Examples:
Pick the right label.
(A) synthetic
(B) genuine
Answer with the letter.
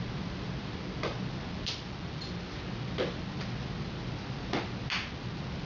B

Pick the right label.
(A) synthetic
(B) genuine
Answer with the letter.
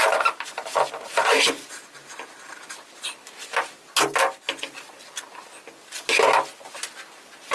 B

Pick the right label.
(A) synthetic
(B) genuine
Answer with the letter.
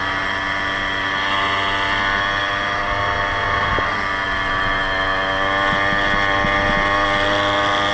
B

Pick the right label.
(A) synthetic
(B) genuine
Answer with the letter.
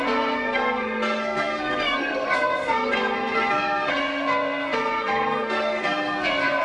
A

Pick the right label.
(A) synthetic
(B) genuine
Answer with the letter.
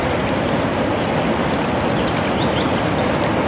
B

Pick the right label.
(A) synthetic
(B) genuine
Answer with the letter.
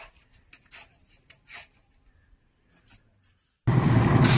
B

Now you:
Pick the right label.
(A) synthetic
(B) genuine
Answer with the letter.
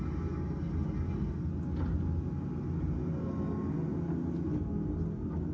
B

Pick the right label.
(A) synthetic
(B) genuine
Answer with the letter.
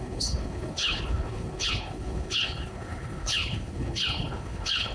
A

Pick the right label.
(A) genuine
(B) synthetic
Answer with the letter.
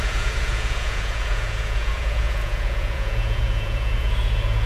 B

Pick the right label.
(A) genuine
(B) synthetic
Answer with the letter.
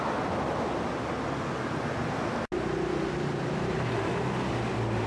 A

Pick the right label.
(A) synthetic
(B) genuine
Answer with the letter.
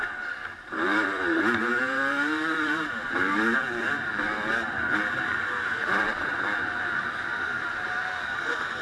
A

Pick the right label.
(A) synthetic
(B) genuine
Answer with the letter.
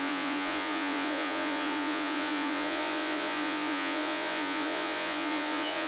A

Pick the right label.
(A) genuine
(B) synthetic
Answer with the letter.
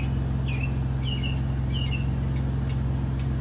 A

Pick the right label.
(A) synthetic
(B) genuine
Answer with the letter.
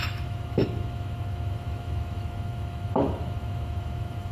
A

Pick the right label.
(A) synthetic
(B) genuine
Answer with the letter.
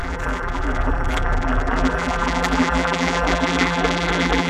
A